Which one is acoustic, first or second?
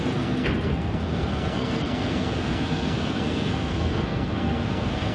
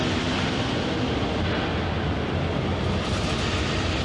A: second